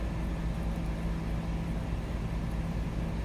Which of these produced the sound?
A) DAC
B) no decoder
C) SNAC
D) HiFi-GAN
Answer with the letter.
B